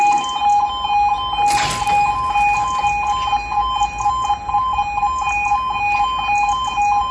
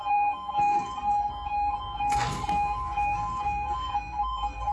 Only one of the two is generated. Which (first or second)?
second